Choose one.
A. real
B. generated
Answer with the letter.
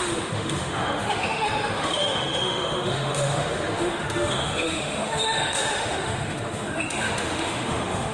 B